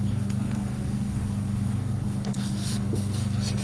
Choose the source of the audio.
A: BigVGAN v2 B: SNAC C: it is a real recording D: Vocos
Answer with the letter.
B